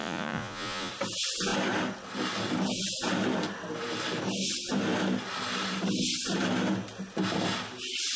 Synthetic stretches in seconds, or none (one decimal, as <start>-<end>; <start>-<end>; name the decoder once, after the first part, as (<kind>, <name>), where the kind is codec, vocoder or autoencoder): 0.0-0.9 (vocoder, Vocos)